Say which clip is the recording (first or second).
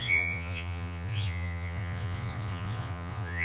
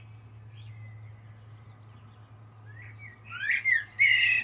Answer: second